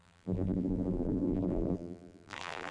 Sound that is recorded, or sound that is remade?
remade